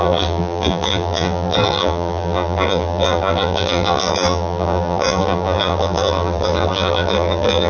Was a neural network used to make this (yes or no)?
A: yes